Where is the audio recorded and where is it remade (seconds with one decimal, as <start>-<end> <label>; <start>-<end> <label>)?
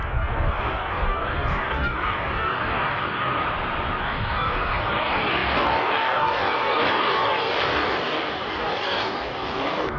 0.0-3.4 remade; 3.4-4.0 recorded; 4.0-10.0 remade